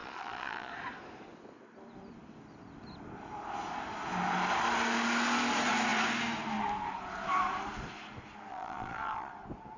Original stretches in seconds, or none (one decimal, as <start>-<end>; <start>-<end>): 0.7-8.5; 9.3-9.8

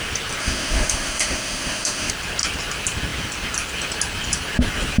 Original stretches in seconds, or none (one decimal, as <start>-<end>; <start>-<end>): 0.0-0.4; 2.1-5.0